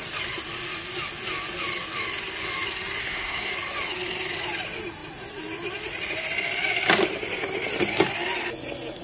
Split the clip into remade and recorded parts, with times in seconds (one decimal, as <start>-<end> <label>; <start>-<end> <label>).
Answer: 0.0-3.0 recorded; 3.0-3.5 remade; 3.5-9.0 recorded